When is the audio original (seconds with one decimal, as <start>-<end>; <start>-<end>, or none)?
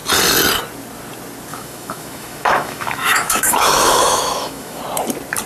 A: 0.0-1.5; 4.8-5.5